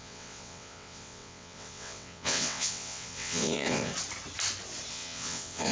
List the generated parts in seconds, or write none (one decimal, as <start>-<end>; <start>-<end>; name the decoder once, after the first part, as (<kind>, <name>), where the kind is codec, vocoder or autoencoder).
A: 0.0-3.9 (vocoder, WaveNeXt); 4.9-5.7